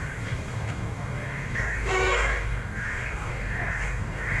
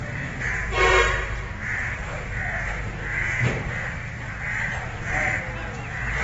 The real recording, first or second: second